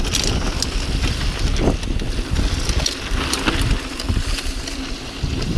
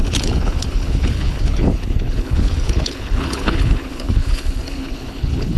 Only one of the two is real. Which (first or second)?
first